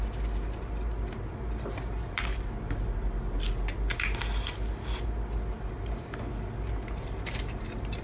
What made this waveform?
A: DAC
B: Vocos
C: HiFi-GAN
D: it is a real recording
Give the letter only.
D